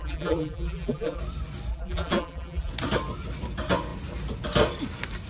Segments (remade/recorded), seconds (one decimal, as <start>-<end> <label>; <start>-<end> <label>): 0.0-1.2 remade; 1.2-1.7 recorded; 1.7-2.7 remade; 2.7-5.3 recorded